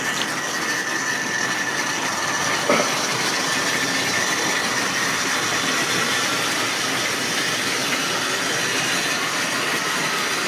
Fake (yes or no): no